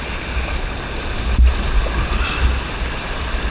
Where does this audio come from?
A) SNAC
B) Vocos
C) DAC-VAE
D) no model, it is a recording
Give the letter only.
D